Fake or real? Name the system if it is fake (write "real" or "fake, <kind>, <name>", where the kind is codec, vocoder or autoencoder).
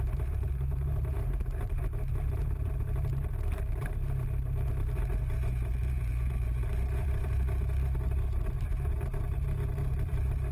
fake, vocoder, BigVGAN v2